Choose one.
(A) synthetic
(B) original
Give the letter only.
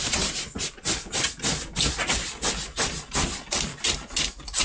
B